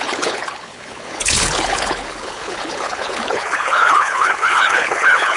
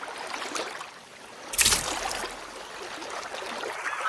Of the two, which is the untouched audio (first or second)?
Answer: second